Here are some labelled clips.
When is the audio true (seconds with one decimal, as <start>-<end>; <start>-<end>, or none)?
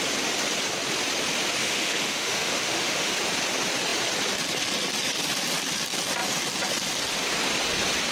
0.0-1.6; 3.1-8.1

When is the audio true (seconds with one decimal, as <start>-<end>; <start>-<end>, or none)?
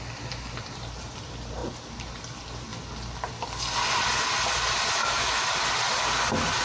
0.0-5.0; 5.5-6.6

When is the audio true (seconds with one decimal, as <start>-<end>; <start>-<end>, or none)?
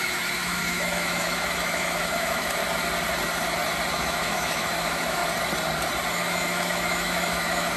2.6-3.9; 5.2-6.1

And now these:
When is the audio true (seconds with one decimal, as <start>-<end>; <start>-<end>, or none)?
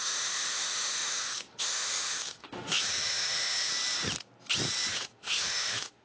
3.7-4.9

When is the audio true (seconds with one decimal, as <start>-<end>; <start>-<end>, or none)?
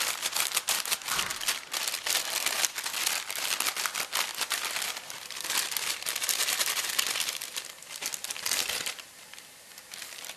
0.0-10.4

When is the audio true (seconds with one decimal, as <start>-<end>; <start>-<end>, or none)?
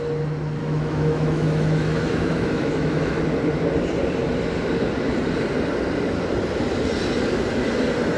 0.0-0.6; 3.2-8.2